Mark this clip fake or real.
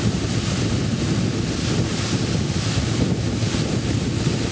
real